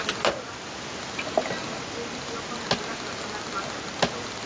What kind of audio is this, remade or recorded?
recorded